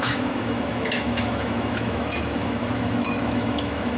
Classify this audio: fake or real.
fake